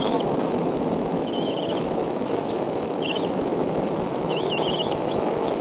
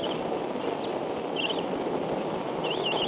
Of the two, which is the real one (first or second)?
second